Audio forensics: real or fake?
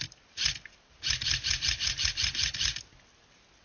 real